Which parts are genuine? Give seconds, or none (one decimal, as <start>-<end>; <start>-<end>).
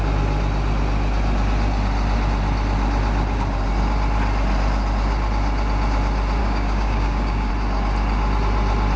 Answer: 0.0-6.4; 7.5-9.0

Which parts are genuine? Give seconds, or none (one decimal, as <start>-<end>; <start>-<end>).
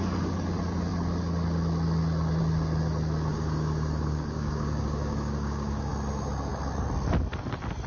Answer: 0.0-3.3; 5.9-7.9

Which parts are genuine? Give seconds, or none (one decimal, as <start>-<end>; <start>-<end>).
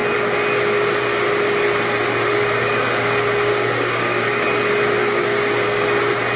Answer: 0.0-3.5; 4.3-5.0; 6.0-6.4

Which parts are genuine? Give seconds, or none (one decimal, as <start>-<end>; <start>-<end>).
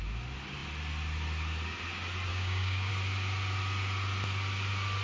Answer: 0.0-2.3; 2.9-5.0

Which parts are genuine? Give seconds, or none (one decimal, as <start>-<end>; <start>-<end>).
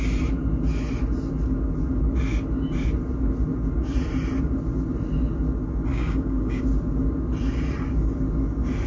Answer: 0.0-5.9; 6.7-8.9